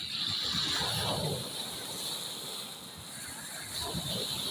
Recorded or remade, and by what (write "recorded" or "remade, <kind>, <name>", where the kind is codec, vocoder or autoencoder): recorded